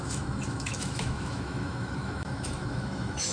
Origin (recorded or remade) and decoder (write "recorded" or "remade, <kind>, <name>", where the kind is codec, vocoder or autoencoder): remade, autoencoder, DAC-VAE